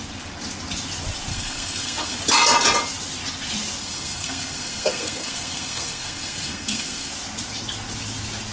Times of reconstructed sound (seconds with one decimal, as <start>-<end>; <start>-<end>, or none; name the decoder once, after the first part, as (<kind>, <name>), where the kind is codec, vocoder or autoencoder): 1.3-2.2 (codec, SNAC); 3.8-7.1